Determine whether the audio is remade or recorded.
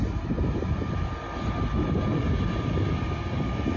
recorded